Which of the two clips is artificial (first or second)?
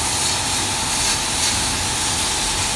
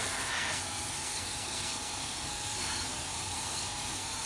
second